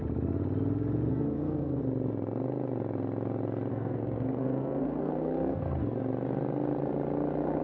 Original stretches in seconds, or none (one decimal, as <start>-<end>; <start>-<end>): 0.0-1.1; 1.8-3.7; 5.6-7.6